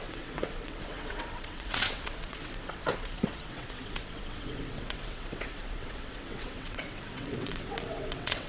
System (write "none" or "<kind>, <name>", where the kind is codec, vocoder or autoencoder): vocoder, WaveNeXt